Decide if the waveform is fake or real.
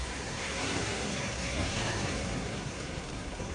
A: fake